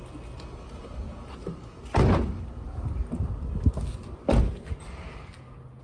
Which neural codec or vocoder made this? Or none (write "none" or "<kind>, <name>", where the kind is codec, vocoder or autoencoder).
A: none